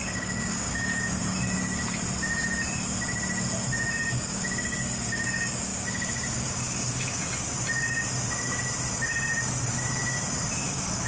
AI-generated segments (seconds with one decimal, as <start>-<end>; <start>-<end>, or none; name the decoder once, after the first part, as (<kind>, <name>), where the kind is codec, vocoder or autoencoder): 0.0-1.2 (codec, DAC); 4.0-7.2; 10.5-11.1